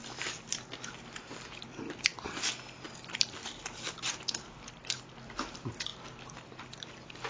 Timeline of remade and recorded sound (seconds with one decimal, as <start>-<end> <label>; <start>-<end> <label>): 0.0-7.3 recorded